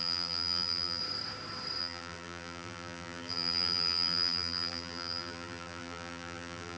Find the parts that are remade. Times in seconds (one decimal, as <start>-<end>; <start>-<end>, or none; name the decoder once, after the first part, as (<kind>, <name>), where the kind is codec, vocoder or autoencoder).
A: 0.0-1.0 (vocoder, BigVGAN v2); 1.8-6.8